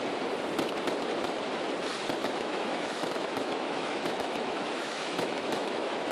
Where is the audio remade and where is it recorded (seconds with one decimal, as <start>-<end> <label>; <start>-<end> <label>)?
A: 0.0-2.2 recorded; 2.2-6.1 remade